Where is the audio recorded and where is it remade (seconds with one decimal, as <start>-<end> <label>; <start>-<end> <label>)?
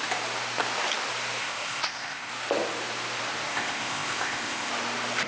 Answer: 0.0-1.4 recorded; 1.4-2.3 remade; 2.3-3.5 recorded; 3.5-4.7 remade; 4.7-5.3 recorded